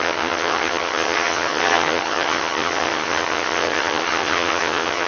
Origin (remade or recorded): remade